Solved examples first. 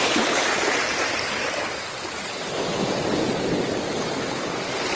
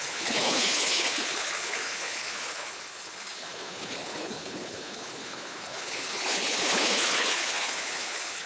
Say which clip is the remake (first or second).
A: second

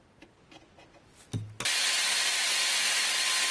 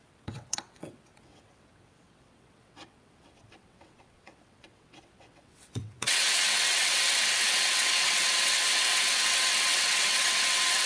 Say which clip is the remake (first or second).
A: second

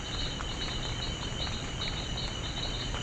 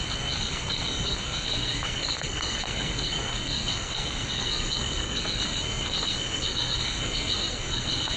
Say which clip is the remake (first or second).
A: second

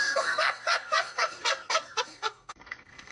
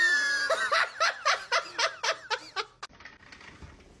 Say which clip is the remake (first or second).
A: first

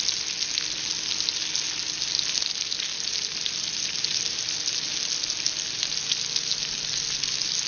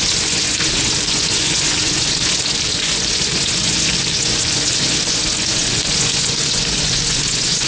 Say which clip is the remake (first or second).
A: second